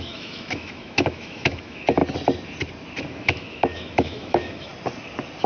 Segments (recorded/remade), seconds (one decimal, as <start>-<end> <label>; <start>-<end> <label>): 0.0-2.0 remade; 2.0-3.0 recorded; 3.0-4.7 remade; 4.7-5.5 recorded